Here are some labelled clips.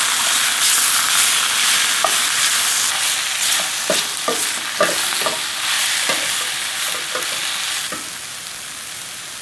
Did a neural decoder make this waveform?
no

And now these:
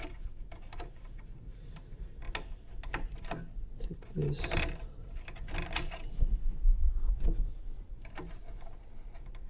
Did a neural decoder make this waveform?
no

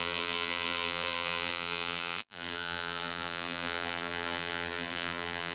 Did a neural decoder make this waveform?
yes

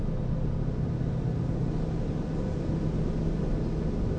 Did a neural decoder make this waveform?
no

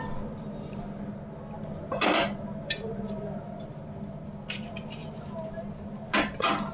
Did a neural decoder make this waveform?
no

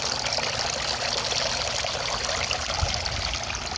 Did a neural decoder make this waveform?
no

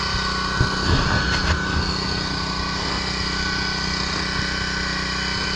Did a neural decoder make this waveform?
no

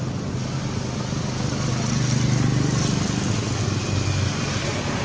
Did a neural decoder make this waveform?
no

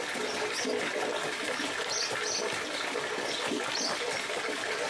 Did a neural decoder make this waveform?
no